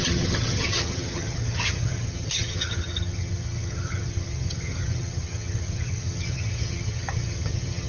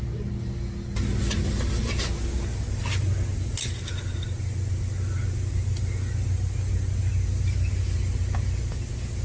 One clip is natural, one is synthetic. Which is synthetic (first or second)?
first